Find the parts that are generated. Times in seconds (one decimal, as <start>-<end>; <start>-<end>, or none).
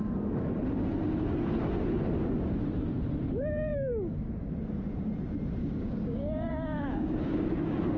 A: 3.7-4.5; 5.6-8.0